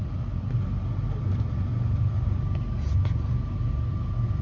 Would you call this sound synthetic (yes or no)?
no